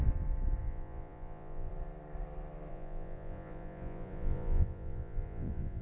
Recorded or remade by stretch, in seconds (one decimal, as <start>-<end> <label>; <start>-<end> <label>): 0.0-0.6 recorded; 0.6-1.7 remade; 1.7-2.7 recorded; 2.7-5.8 remade